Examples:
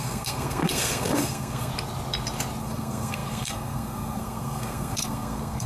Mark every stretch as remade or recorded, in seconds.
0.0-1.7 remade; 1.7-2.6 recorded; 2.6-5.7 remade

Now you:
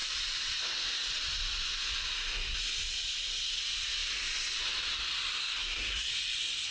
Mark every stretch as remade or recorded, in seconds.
0.0-5.4 recorded; 5.4-6.1 remade; 6.1-6.7 recorded

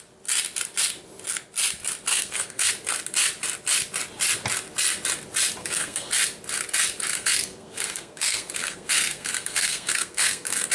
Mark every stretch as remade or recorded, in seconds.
0.0-2.1 recorded; 2.1-2.7 remade; 2.7-5.6 recorded; 5.6-6.1 remade; 6.1-7.1 recorded; 7.1-10.7 remade

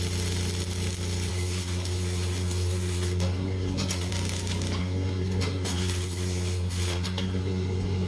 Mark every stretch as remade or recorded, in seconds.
0.0-1.3 recorded; 1.3-4.1 remade; 4.1-4.8 recorded; 4.8-8.1 remade

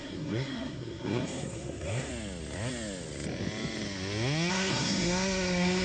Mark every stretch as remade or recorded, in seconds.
0.0-2.1 remade; 2.1-4.5 recorded; 4.5-5.8 remade

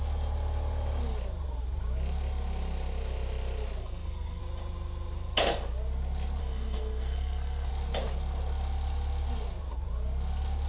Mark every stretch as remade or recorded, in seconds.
0.0-3.8 recorded; 3.8-4.4 remade; 4.4-6.4 recorded; 6.4-7.7 remade; 7.7-10.7 recorded

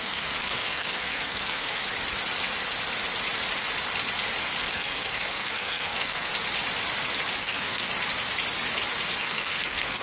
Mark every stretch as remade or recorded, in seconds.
0.0-1.8 remade; 1.8-4.6 recorded; 4.6-6.3 remade; 6.3-7.4 recorded; 7.4-7.9 remade; 7.9-9.2 recorded; 9.2-10.0 remade